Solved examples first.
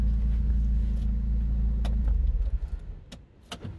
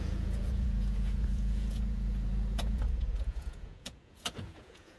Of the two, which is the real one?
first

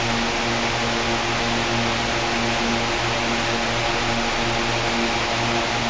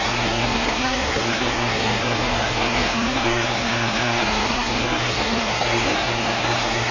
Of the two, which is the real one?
first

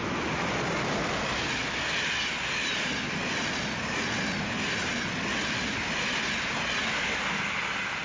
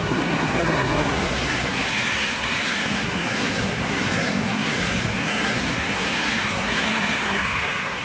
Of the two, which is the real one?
first